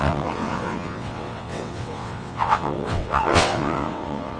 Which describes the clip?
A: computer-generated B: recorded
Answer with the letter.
A